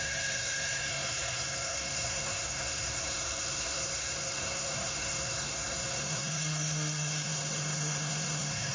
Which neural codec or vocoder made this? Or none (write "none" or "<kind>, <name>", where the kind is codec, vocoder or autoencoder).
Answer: codec, SNAC